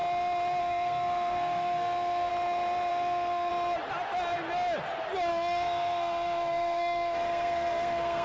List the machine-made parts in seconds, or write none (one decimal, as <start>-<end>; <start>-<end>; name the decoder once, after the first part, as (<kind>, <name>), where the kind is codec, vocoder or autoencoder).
0.6-2.3 (codec, SNAC); 2.9-3.5; 5.3-8.2